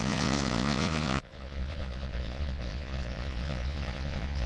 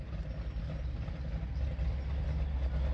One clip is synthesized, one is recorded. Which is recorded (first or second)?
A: second